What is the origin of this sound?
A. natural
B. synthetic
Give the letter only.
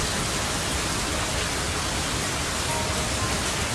A